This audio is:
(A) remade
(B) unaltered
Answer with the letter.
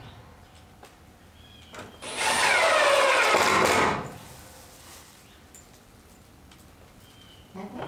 B